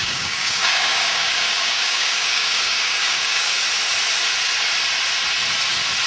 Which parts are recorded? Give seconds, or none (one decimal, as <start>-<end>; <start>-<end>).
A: 3.6-6.1